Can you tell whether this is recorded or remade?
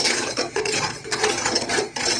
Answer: remade